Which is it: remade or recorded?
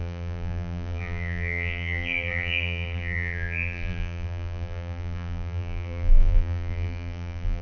remade